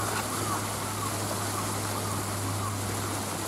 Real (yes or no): yes